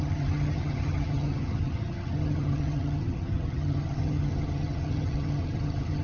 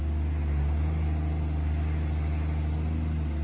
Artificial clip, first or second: first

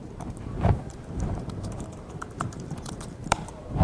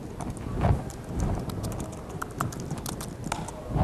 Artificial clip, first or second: first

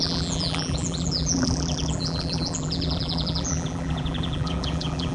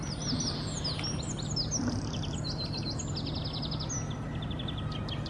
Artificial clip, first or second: first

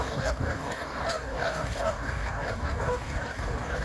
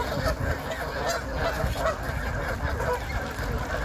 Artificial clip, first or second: first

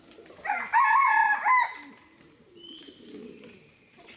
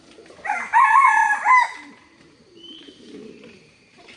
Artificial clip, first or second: second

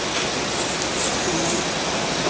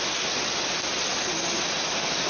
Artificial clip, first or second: second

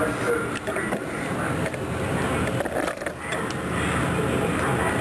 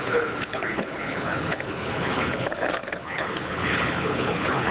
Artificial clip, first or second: second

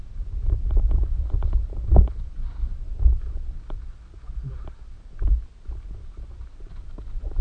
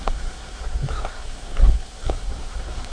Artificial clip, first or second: second